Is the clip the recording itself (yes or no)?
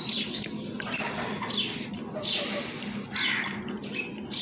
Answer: yes